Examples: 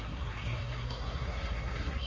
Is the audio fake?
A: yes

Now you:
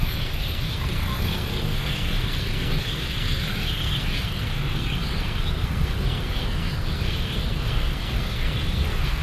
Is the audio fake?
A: yes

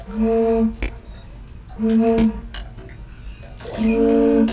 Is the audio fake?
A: no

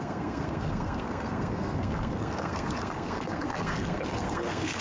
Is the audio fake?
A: yes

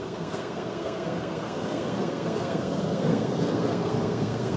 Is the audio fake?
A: yes